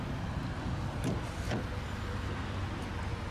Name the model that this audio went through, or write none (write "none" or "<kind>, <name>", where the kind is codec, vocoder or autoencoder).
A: none